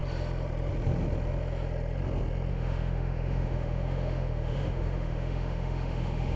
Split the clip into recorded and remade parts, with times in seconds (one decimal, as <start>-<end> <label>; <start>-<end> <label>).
0.0-2.5 recorded; 2.5-6.4 remade